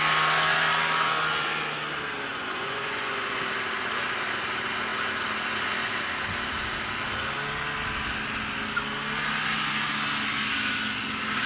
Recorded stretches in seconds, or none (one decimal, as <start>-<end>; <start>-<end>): 0.0-2.3; 3.4-11.5